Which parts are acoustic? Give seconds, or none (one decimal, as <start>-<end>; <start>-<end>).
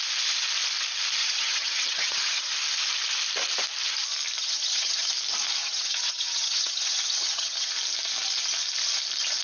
0.0-1.2; 2.5-4.4; 5.1-5.6; 7.7-9.4